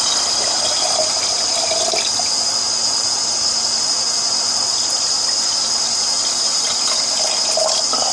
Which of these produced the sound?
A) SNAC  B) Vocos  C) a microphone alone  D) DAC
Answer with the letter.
C